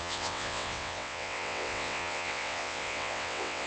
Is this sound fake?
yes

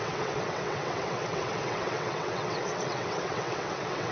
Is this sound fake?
yes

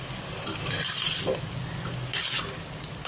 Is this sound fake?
no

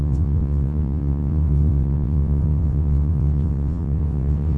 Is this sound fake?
yes